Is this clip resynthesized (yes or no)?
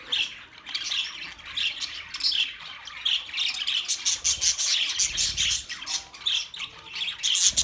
no